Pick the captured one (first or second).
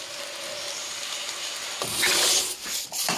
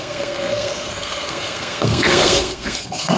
first